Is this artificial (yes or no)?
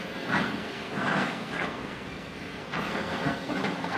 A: yes